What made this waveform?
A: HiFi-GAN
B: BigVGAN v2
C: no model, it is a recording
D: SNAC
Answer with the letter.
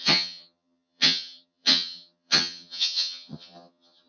A